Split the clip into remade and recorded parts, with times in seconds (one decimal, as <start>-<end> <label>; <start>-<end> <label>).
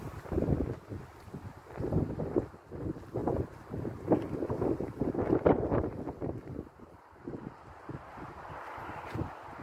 0.0-9.6 recorded